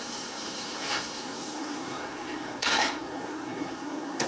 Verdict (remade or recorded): remade